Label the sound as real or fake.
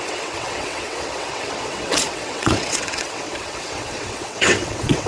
fake